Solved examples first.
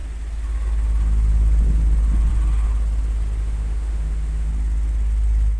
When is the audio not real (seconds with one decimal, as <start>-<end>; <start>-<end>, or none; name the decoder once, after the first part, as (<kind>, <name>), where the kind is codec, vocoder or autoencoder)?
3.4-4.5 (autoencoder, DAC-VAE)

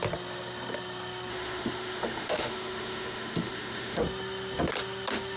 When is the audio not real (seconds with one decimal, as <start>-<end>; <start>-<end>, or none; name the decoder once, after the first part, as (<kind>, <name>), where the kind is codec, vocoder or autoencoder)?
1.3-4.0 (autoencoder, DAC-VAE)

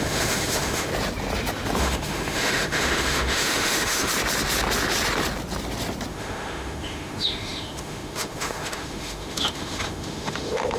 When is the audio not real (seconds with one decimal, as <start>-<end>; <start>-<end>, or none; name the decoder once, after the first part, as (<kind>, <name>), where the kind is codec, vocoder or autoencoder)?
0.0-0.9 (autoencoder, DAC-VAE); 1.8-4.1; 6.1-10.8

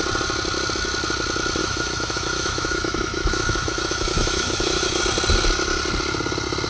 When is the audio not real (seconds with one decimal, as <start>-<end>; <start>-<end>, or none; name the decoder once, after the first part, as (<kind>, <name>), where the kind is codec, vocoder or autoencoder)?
1.6-5.0 (autoencoder, DAC-VAE)

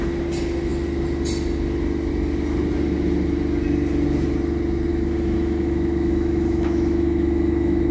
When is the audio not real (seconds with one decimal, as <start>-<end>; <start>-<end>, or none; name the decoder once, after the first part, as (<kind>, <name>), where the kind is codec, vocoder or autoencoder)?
4.9-7.9 (autoencoder, DAC-VAE)

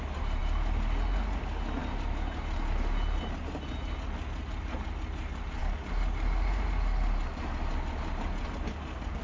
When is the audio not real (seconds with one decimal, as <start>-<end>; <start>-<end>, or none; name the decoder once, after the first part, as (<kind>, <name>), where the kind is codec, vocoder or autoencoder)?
none

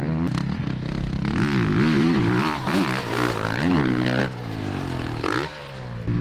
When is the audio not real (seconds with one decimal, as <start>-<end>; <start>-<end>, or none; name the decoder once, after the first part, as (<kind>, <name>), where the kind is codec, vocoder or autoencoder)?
none

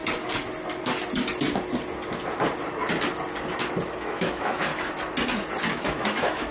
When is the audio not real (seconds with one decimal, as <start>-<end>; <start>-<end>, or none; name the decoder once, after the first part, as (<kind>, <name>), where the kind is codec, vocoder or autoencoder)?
3.9-4.7 (autoencoder, DAC-VAE); 5.7-6.5